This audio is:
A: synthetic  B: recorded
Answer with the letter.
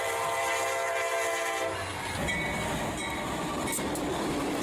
B